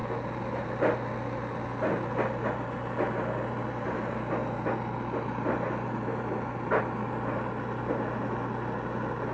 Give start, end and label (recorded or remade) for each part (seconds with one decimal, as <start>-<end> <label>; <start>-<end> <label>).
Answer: 0.0-9.3 recorded

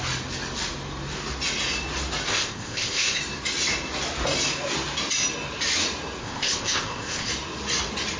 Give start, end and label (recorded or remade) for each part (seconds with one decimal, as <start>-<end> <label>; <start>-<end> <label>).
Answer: 0.0-2.3 recorded; 2.3-3.2 remade; 3.2-6.2 recorded; 6.2-7.3 remade; 7.3-8.2 recorded

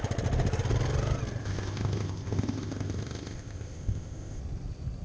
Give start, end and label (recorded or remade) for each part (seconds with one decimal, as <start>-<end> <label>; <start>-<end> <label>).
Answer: 0.0-1.4 recorded; 1.4-4.4 remade; 4.4-5.0 recorded

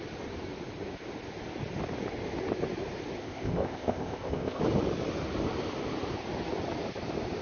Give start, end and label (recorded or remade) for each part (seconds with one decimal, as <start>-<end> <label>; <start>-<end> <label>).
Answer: 0.0-3.2 recorded; 3.2-4.6 remade; 4.6-7.4 recorded

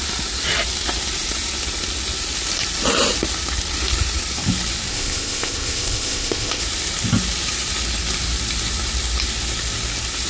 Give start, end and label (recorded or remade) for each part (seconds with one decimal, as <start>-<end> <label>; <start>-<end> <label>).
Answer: 0.0-4.9 recorded; 4.9-6.6 remade; 6.6-10.3 recorded

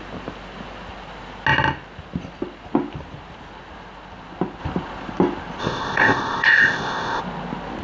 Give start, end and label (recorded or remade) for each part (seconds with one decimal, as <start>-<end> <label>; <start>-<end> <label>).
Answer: 0.0-5.6 recorded; 5.6-7.2 remade; 7.2-7.8 recorded

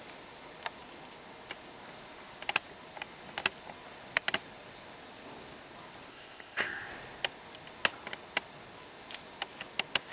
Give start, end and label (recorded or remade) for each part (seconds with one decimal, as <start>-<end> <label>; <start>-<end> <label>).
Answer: 0.0-6.1 recorded; 6.1-6.9 remade; 6.9-10.1 recorded